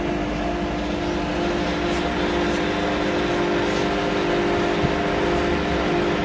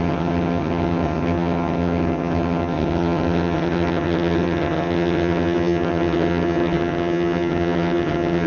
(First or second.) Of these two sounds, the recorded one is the first